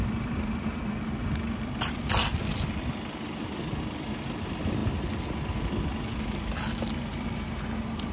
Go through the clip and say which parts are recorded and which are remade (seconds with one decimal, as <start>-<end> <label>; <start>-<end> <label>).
0.0-8.1 recorded